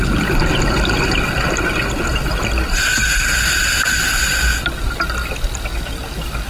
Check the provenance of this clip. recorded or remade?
recorded